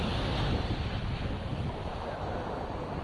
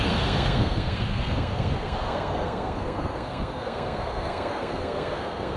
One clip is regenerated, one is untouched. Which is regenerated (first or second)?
second